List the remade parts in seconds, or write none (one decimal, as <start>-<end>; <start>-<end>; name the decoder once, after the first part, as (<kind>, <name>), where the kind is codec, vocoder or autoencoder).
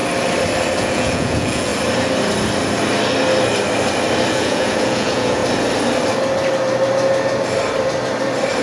0.8-1.7 (vocoder, Vocos); 4.3-5.4